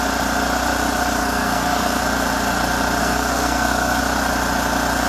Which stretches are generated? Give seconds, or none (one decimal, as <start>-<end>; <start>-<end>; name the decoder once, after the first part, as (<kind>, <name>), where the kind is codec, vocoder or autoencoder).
1.2-2.0 (codec, SNAC); 3.0-4.0